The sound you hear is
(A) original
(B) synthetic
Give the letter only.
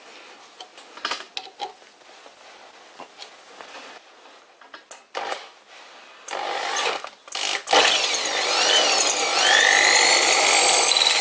A